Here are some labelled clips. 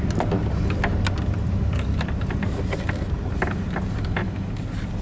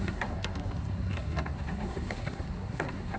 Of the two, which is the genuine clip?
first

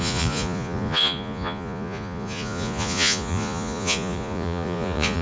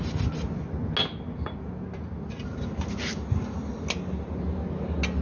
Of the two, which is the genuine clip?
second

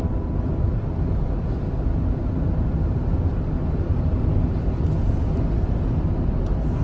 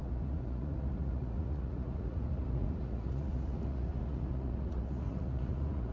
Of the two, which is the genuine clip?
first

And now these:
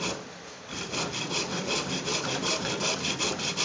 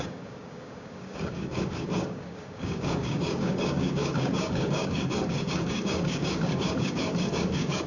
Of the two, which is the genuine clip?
first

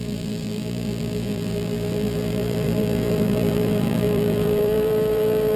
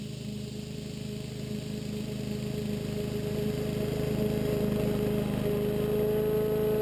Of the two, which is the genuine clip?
second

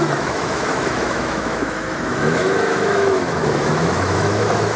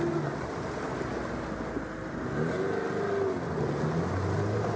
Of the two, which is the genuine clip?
second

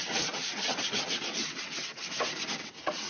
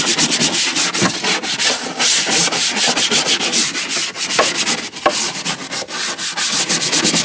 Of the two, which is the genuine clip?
second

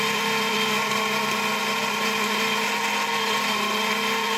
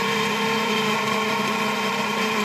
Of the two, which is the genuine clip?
first